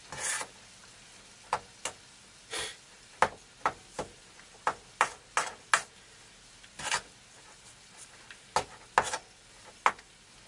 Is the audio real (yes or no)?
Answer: yes